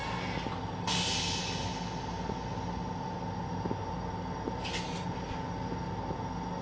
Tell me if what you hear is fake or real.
real